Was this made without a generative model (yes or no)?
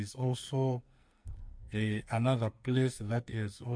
no